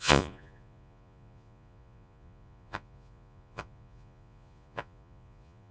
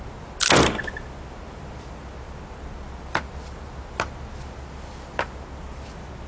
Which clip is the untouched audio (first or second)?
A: second